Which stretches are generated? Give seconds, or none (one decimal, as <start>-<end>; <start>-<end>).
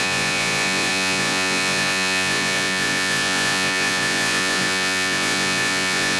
0.0-6.2